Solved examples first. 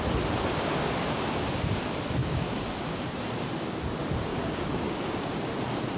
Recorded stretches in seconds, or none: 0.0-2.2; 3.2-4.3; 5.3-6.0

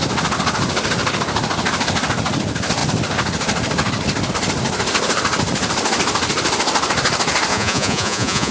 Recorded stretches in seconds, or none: 0.0-7.5

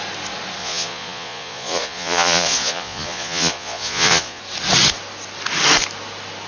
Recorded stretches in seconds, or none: 0.0-0.6; 4.4-6.5

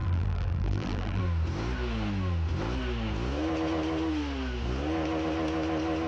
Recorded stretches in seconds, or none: 1.2-6.1

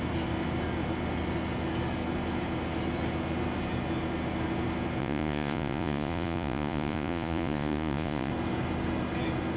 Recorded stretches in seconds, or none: 0.0-5.0; 8.3-9.6

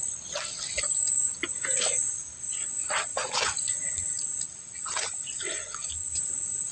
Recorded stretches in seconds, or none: 0.0-3.1; 5.9-6.7